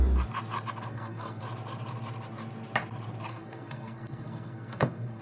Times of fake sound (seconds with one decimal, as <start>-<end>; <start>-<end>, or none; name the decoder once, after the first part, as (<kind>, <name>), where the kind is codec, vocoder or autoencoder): 0.9-1.4 (codec, SNAC); 3.3-5.2